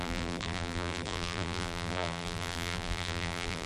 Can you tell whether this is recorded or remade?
remade